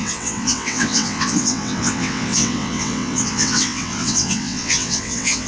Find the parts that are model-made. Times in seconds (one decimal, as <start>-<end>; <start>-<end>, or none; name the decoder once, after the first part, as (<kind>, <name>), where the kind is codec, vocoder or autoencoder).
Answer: 0.0-5.5 (vocoder, WaveNeXt)